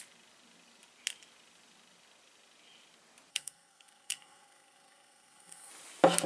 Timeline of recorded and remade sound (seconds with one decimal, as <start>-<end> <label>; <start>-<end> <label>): 0.0-3.3 recorded; 3.3-5.7 remade; 5.7-6.3 recorded